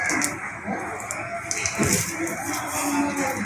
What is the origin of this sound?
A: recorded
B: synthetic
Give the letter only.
A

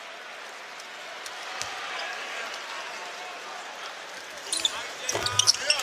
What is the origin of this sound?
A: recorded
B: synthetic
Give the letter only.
A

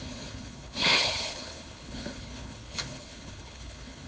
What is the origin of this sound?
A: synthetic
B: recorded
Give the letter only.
A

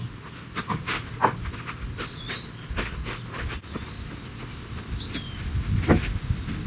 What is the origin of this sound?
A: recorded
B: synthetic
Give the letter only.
A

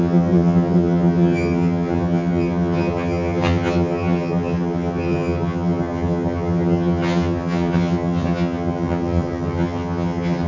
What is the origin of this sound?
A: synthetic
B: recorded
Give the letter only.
A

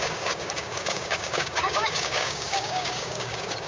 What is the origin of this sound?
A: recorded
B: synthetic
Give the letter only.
B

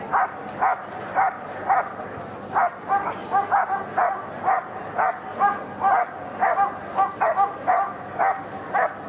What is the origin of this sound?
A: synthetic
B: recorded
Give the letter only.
B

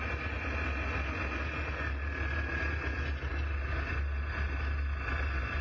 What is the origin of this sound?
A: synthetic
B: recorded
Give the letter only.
B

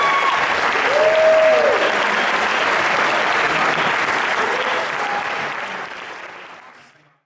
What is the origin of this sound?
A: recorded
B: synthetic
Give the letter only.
A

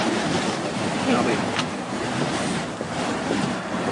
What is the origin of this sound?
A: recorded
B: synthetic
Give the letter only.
B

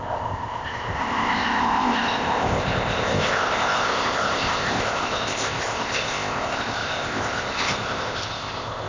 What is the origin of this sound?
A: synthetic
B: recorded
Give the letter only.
A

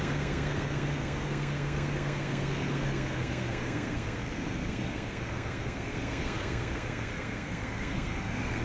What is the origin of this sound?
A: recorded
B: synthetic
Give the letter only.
B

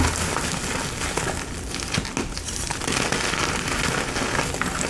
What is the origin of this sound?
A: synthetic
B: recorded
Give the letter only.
B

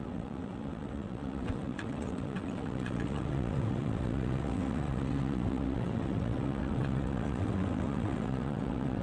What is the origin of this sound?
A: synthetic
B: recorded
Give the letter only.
A